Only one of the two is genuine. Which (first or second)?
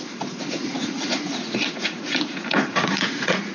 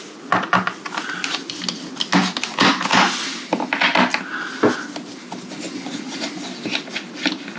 second